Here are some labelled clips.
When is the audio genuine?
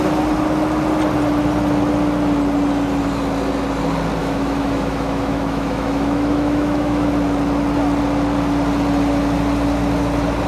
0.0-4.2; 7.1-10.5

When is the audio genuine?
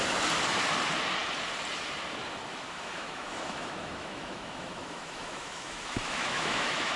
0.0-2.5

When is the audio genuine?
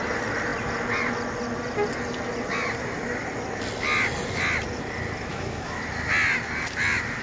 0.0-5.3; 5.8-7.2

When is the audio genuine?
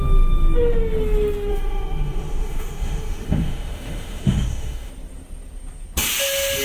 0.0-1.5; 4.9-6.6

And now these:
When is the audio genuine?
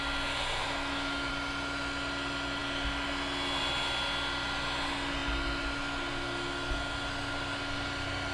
0.0-0.6; 1.3-8.3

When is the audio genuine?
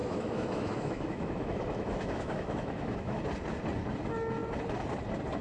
3.2-5.4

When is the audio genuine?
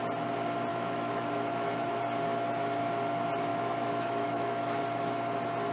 0.0-0.7; 1.9-3.5; 4.8-5.7